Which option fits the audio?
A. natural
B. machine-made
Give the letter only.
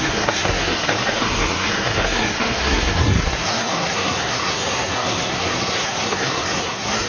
B